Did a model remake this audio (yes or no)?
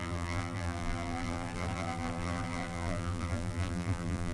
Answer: yes